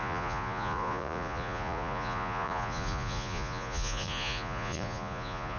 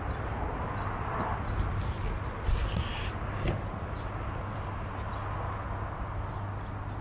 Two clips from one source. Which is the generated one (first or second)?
first